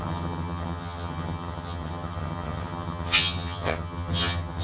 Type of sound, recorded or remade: remade